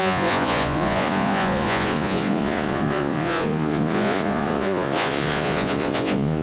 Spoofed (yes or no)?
yes